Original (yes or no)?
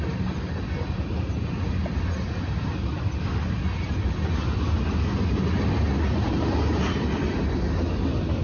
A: yes